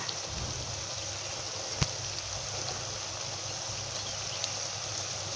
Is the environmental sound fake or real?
real